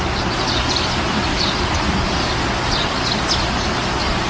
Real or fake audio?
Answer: real